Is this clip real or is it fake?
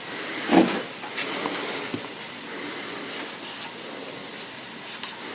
real